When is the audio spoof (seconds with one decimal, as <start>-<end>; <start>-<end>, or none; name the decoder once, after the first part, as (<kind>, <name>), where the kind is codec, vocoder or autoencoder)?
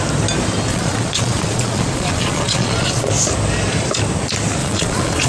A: 0.7-3.1 (vocoder, Vocos); 4.6-5.3